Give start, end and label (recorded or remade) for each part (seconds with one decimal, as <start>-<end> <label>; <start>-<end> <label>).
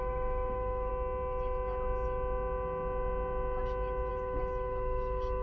0.0-0.9 remade; 0.9-4.1 recorded; 4.1-5.4 remade